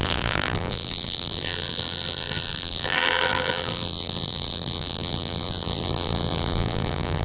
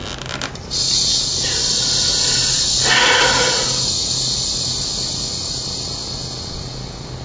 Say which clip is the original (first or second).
second